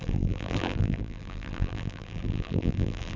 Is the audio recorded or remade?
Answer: remade